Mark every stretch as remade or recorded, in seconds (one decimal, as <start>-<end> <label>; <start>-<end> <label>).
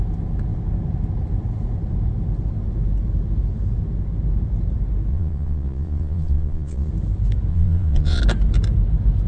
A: 0.0-5.1 recorded; 5.1-6.9 remade; 6.9-7.5 recorded; 7.5-8.2 remade; 8.2-9.3 recorded